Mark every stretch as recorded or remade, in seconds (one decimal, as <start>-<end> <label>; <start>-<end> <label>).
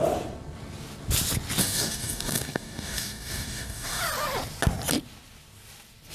0.0-1.6 recorded; 1.6-4.0 remade; 4.0-6.1 recorded